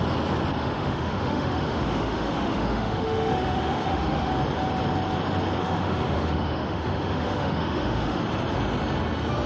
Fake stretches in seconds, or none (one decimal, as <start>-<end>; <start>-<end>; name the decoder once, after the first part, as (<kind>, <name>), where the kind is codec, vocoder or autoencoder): 0.6-4.3 (autoencoder, DAC-VAE); 5.6-8.2